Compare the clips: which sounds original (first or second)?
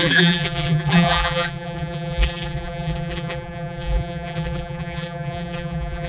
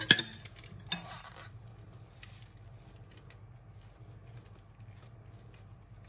second